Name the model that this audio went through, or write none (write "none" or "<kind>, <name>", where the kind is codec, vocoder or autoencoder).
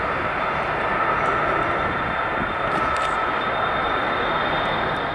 none